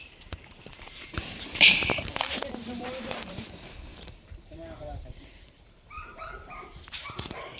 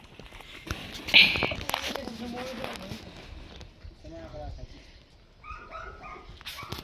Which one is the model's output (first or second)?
first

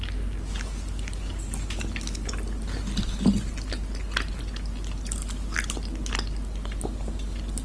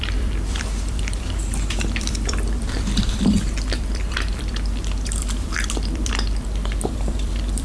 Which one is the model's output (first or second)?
second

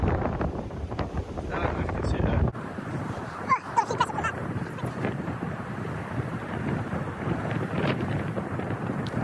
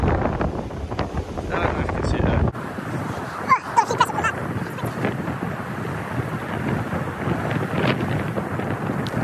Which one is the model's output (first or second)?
first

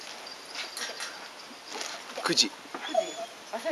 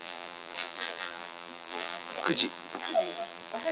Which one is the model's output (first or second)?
second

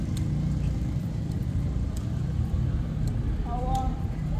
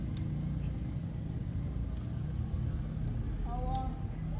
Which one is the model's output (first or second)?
first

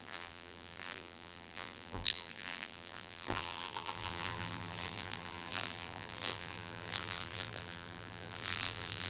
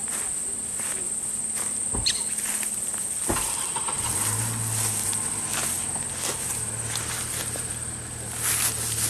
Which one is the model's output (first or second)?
first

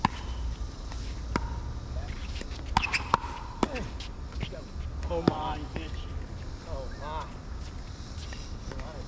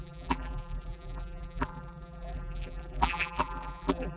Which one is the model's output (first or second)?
second